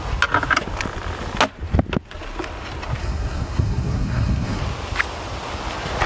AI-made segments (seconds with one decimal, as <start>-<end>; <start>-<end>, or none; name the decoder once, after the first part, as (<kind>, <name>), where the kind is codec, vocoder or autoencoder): 3.0-4.6 (codec, SNAC)